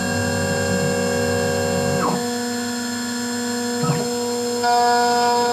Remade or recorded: recorded